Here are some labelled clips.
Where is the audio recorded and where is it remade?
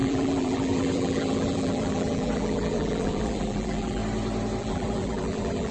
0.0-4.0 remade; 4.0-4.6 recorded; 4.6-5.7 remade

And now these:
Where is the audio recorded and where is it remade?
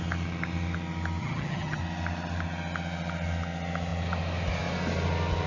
0.0-1.2 recorded; 1.2-1.8 remade; 1.8-5.5 recorded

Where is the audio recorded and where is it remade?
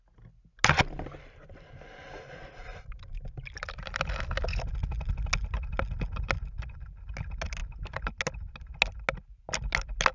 0.0-0.8 recorded; 0.8-2.0 remade; 2.0-2.7 recorded; 2.7-4.7 remade; 4.7-7.6 recorded; 7.6-8.2 remade; 8.2-10.1 recorded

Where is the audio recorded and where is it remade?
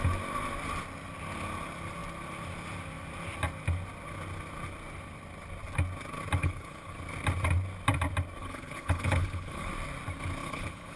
0.0-6.4 recorded; 6.4-6.9 remade; 6.9-8.4 recorded; 8.4-9.7 remade; 9.7-10.4 recorded; 10.4-11.0 remade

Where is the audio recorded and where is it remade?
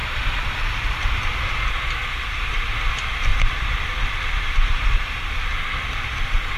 0.0-2.9 remade; 2.9-3.3 recorded; 3.3-6.6 remade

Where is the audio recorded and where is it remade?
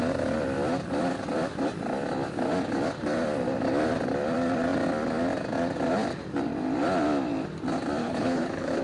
0.0-8.0 recorded; 8.0-8.8 remade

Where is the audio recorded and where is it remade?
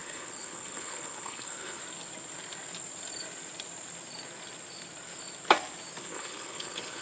0.0-1.8 remade; 1.8-6.0 recorded; 6.0-7.0 remade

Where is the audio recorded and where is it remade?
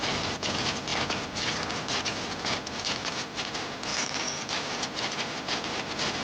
0.0-6.2 recorded